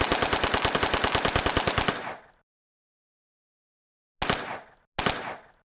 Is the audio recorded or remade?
recorded